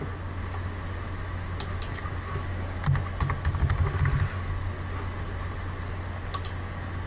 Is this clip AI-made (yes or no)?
no